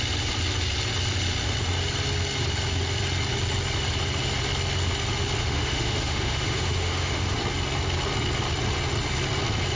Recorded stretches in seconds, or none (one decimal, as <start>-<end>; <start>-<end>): 0.0-5.4; 7.4-9.8